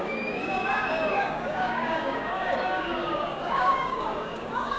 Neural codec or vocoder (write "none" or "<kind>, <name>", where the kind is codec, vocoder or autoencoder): codec, DAC